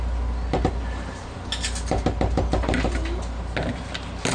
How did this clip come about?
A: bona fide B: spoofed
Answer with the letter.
A